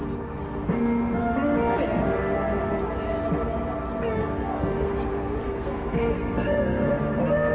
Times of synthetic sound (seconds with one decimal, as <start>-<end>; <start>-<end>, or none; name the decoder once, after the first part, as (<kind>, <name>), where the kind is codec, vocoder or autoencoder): 4.2-4.9 (codec, SNAC); 5.4-6.9